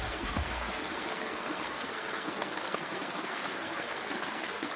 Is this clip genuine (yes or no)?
no